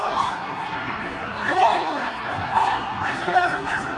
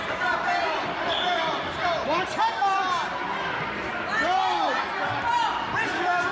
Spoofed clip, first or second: first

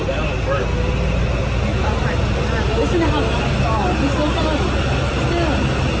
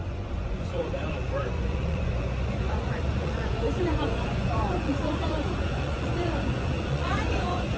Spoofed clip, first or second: second